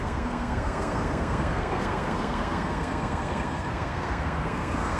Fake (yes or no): yes